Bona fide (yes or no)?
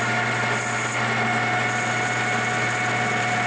yes